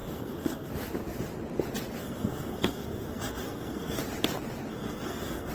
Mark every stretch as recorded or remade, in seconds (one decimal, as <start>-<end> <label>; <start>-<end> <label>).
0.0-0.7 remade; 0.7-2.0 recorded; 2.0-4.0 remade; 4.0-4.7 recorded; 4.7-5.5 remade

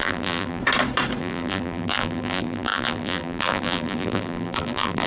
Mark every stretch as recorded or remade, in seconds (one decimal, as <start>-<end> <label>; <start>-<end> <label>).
0.0-0.6 remade; 0.6-1.2 recorded; 1.2-5.1 remade

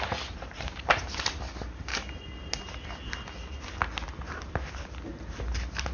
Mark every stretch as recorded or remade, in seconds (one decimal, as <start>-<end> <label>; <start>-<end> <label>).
0.0-5.9 recorded